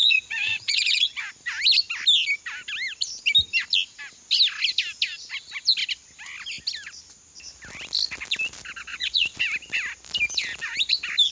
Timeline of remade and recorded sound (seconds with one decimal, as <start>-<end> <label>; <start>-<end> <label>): 0.0-1.2 remade; 1.2-8.9 recorded; 8.9-9.4 remade; 9.4-11.3 recorded